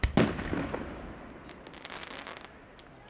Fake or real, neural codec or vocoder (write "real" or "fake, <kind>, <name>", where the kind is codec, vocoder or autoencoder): real